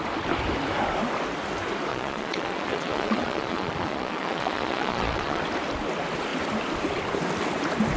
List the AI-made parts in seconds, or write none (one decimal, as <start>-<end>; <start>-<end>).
1.9-5.4

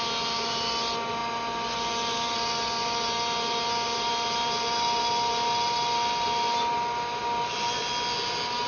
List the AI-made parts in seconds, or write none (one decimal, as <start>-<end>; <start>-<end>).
none